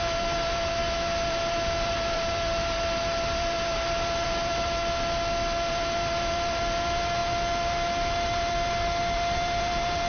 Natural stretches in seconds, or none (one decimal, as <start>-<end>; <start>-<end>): 4.8-5.7

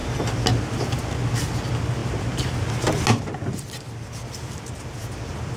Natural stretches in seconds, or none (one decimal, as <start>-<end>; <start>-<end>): 0.0-5.6

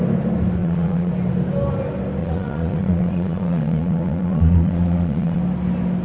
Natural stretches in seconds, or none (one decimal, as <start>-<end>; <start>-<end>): 0.0-0.6; 1.1-2.2; 5.4-6.0

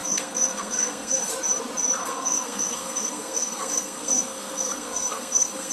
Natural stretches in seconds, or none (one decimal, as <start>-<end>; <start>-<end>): 1.3-2.0

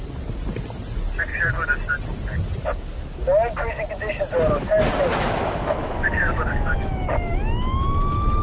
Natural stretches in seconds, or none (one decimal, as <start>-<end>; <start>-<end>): 0.0-5.1

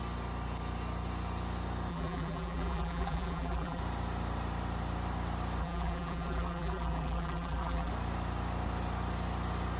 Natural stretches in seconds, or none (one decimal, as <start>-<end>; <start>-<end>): 0.0-1.9; 3.8-5.6; 7.9-9.8

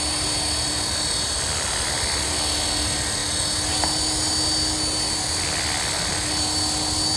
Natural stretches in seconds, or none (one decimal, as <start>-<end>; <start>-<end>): 0.0-7.2

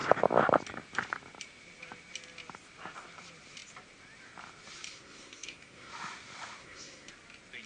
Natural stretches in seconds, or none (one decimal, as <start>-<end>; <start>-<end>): 0.0-4.9; 5.9-6.6; 7.1-7.7